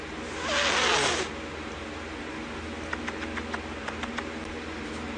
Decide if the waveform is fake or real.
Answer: real